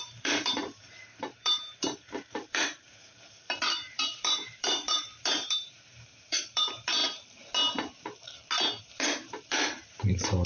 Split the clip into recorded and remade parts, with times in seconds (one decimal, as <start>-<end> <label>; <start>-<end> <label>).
0.0-7.0 remade; 7.0-8.8 recorded; 8.8-10.5 remade

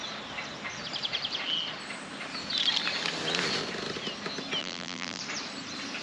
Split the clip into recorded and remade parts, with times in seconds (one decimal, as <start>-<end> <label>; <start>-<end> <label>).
0.0-4.6 recorded; 4.6-5.2 remade; 5.2-6.0 recorded